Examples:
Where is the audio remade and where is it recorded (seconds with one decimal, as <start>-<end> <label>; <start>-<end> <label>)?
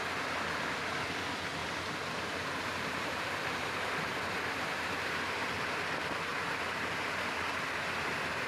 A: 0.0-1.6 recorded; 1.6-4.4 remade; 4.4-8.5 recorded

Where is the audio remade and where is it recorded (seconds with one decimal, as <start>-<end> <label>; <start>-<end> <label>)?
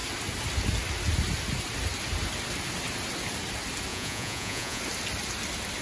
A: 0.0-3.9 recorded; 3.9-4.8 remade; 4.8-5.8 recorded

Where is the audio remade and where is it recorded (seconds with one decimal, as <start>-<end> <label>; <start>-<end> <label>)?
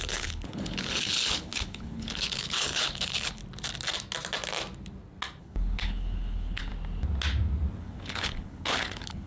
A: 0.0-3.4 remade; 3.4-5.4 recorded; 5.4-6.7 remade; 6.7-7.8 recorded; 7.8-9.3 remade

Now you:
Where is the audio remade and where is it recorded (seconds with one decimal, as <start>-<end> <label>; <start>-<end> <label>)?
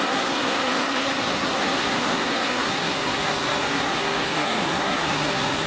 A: 0.0-5.7 remade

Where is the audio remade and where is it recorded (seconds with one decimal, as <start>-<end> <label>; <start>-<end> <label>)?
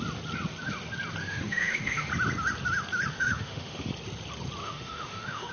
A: 0.0-1.2 recorded; 1.2-2.1 remade; 2.1-3.1 recorded; 3.1-3.9 remade; 3.9-4.6 recorded; 4.6-5.5 remade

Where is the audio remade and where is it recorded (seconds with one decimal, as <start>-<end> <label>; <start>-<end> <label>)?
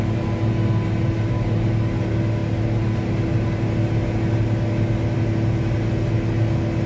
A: 0.0-6.9 recorded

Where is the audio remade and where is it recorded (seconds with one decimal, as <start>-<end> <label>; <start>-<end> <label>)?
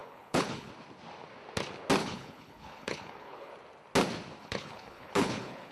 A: 0.0-0.7 remade; 0.7-2.0 recorded; 2.0-3.5 remade; 3.5-4.4 recorded; 4.4-5.7 remade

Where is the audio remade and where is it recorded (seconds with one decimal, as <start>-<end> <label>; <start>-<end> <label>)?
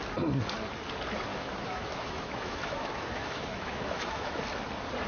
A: 0.0-1.3 recorded; 1.3-4.4 remade; 4.4-5.1 recorded